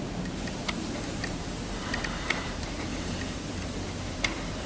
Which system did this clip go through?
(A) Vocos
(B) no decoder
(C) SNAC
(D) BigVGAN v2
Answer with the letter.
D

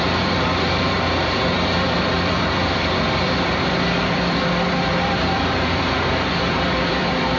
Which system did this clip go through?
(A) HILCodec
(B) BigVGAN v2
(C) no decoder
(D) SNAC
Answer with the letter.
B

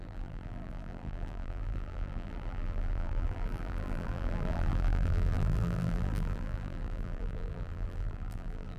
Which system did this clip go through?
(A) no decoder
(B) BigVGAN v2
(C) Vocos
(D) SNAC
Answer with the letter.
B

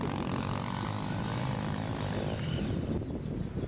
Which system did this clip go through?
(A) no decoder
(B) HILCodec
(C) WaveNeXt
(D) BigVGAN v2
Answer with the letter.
A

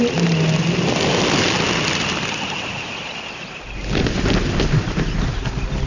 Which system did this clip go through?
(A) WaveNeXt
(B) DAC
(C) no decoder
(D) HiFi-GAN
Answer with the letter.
C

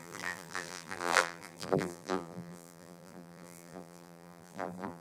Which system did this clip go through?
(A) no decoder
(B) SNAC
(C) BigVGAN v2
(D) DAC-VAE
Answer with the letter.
C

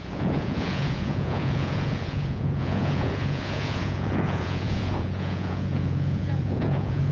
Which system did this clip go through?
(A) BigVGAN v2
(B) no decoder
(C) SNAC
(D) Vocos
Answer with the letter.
D